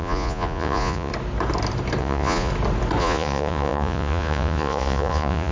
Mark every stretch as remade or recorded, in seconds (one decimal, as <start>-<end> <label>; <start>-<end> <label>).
0.0-1.1 remade; 1.1-2.0 recorded; 2.0-2.5 remade; 2.5-3.0 recorded; 3.0-5.5 remade